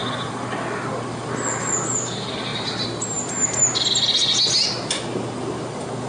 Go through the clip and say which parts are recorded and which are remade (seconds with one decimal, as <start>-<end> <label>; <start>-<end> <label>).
0.0-2.5 recorded; 2.5-3.6 remade; 3.6-6.1 recorded